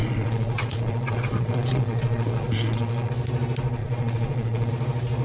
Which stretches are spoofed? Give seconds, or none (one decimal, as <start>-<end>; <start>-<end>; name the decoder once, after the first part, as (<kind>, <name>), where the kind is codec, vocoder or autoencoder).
0.0-3.1 (vocoder, Vocos); 3.8-4.7